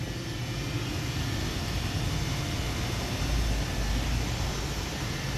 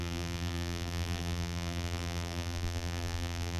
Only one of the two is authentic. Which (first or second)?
first